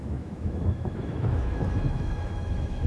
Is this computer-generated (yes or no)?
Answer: yes